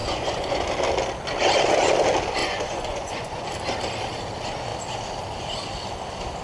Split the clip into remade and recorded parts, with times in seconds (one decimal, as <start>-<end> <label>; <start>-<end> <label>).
0.0-0.7 remade; 0.7-2.4 recorded; 2.4-3.5 remade; 3.5-6.4 recorded